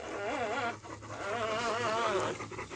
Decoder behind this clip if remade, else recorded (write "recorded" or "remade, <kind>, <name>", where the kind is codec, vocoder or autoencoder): recorded